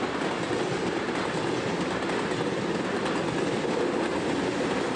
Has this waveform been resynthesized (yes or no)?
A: no